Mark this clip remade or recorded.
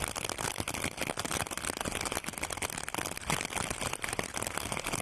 recorded